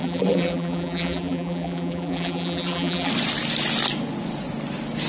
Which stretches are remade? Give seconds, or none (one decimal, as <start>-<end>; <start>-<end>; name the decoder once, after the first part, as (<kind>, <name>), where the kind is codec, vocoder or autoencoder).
0.0-3.1 (vocoder, BigVGAN v2)